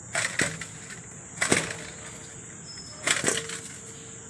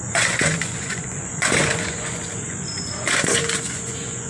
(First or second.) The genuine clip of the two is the first